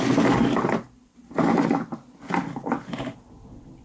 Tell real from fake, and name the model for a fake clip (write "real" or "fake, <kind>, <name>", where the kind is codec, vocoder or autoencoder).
real